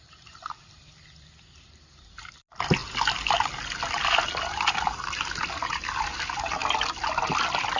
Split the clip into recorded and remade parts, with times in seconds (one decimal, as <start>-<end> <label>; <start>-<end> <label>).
0.0-7.8 recorded